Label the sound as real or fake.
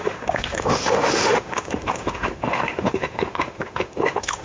fake